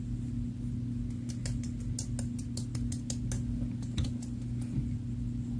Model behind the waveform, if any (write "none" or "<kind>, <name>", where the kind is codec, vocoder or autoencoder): none